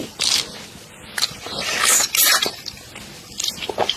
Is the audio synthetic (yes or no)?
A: no